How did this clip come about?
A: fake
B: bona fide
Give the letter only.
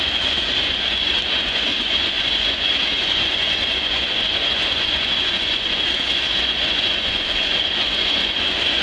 A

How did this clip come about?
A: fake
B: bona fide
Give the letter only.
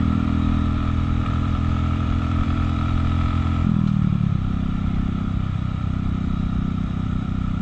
A